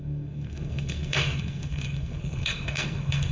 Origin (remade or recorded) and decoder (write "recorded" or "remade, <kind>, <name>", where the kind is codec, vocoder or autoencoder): remade, codec, SNAC